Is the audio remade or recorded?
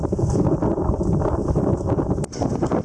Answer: recorded